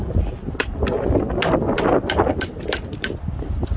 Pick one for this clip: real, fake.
real